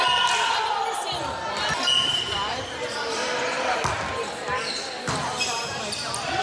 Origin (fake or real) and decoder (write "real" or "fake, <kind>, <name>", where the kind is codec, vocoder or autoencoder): real